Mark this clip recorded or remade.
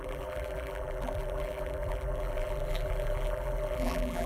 remade